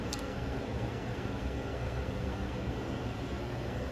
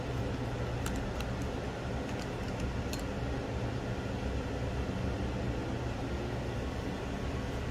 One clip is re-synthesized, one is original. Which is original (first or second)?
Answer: second